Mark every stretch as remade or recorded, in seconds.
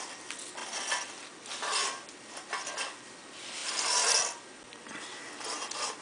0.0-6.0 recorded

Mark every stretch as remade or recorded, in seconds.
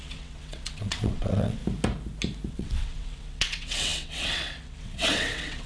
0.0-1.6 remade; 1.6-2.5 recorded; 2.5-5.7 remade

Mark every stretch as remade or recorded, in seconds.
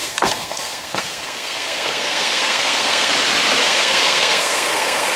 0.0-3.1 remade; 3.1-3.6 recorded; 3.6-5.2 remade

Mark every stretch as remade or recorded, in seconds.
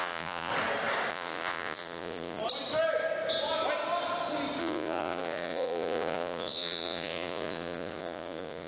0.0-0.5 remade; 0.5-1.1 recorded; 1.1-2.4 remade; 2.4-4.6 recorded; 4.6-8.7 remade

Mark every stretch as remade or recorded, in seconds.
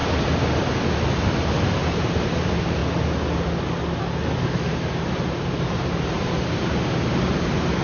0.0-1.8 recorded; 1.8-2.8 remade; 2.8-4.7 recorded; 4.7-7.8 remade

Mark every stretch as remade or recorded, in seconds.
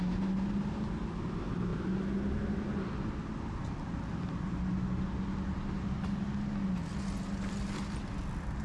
0.0-8.6 recorded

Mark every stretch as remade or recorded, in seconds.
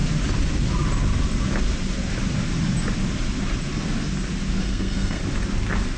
0.0-4.6 recorded; 4.6-5.2 remade; 5.2-6.0 recorded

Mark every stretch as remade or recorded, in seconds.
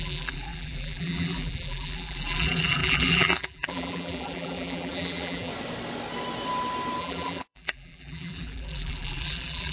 0.0-5.5 remade; 5.5-7.0 recorded; 7.0-9.7 remade